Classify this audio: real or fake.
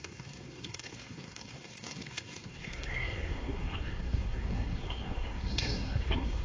fake